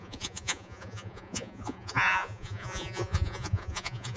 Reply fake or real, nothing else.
fake